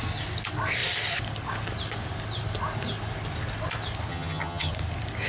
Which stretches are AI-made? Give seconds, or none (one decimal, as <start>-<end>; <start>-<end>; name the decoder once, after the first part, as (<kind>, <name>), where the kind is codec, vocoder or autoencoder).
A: 4.1-4.7 (vocoder, HiFi-GAN)